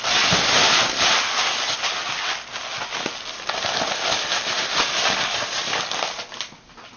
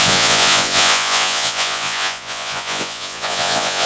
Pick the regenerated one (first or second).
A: second